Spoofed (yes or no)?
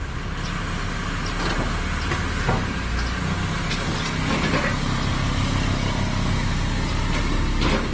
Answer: no